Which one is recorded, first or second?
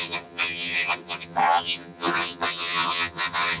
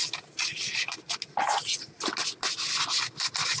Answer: second